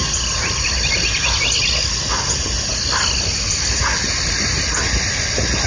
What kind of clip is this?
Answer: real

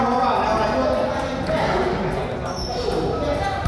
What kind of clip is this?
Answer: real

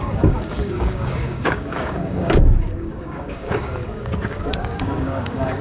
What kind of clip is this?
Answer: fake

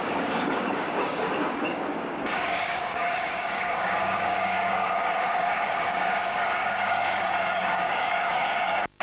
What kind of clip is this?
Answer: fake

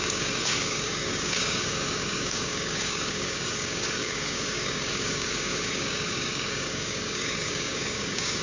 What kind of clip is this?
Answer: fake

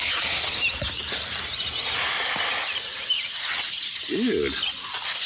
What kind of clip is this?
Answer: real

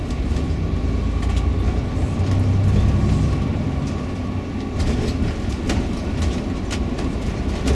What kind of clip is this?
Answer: real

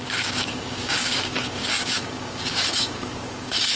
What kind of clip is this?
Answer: fake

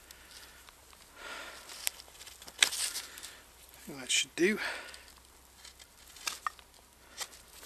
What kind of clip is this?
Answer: real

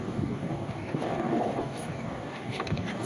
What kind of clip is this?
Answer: fake